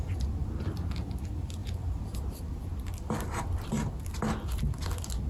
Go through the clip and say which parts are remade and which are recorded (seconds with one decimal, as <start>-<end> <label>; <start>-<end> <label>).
0.0-5.3 recorded